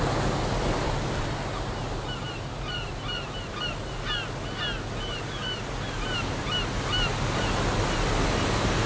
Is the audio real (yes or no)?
yes